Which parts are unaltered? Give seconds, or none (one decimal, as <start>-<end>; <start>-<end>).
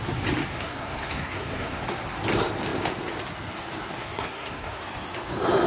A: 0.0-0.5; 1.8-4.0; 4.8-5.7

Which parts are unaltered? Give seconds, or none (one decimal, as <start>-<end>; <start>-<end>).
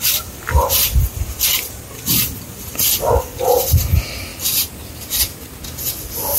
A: 0.0-6.4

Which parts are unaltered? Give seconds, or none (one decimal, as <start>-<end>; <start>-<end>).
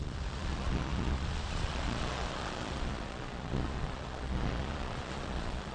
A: none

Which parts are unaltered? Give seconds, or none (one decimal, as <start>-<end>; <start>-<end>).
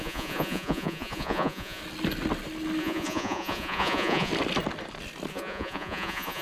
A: 1.8-2.8; 4.3-5.3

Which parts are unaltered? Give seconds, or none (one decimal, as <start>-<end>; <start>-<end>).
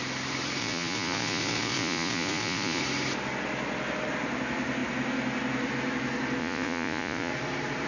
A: 0.0-0.6; 2.8-6.4; 7.3-7.9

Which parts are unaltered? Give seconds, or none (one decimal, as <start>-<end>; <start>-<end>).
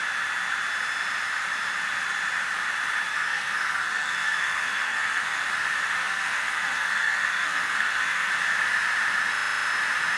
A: 0.0-3.1; 5.4-6.0; 8.3-10.2